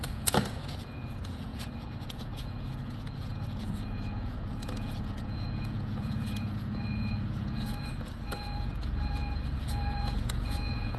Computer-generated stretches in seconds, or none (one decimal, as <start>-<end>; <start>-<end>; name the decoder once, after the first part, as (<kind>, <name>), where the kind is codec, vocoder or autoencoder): 0.0-11.0 (vocoder, Vocos)